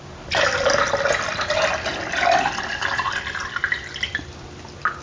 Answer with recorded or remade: recorded